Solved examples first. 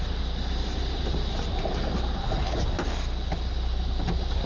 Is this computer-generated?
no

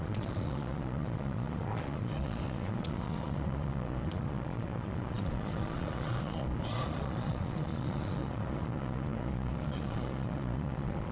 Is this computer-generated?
yes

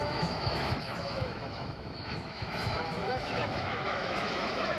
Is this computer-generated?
yes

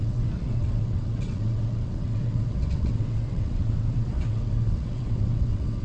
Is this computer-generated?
yes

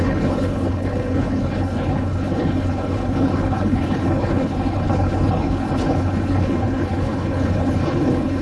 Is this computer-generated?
yes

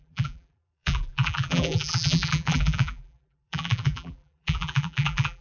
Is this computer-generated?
yes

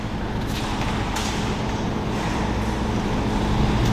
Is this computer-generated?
no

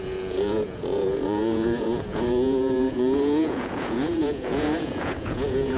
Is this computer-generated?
yes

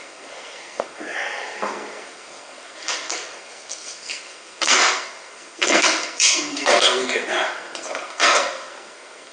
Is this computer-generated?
yes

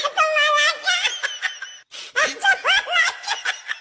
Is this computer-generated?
no